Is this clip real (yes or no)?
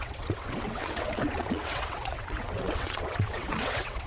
no